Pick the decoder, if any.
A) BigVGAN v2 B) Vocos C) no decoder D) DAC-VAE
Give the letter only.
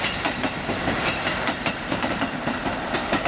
A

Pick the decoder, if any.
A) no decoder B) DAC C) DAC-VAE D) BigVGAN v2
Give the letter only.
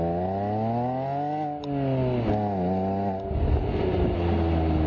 A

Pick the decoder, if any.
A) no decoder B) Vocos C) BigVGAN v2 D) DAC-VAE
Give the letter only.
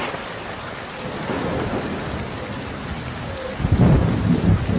A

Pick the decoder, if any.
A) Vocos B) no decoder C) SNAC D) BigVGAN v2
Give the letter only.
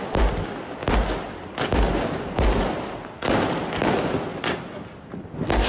B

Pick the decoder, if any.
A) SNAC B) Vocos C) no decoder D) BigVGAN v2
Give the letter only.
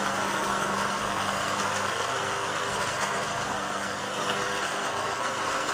A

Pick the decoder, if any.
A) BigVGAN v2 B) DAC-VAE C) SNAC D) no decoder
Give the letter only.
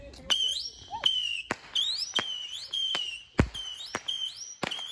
D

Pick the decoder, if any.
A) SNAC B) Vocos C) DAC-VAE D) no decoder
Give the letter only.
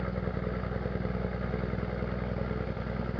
D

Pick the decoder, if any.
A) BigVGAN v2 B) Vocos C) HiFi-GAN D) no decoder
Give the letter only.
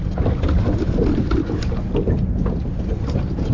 D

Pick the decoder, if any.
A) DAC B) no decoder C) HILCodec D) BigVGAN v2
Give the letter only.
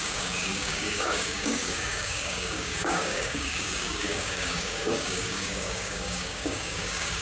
A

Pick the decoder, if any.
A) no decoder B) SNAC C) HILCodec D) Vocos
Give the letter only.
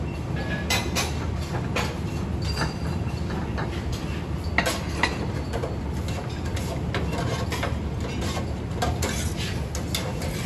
A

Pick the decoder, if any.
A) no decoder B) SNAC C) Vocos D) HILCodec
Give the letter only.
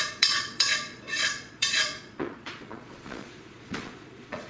C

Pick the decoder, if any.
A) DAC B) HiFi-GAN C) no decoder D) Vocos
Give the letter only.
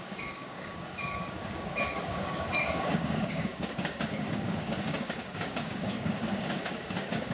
A